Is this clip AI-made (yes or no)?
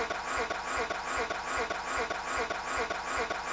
no